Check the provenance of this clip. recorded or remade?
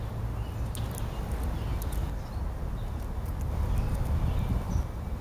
recorded